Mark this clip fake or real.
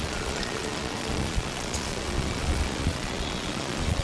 fake